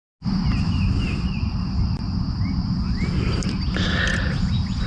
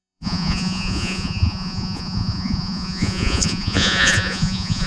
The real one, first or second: first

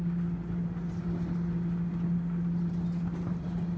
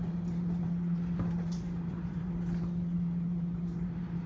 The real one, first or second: first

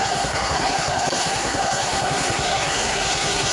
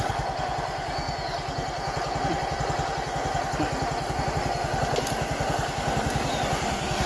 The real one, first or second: second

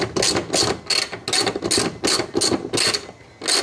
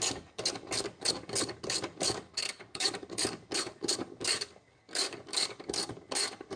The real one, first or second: first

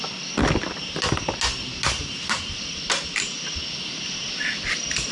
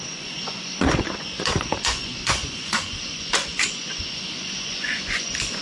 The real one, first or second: first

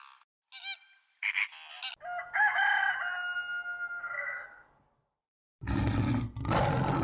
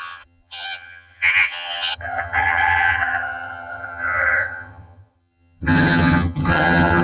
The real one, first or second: first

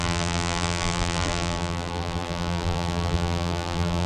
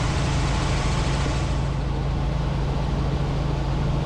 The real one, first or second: second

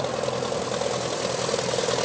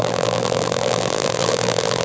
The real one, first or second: first